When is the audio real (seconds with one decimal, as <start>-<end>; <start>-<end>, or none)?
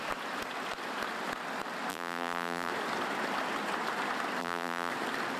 0.0-1.9; 2.7-4.4; 4.9-5.4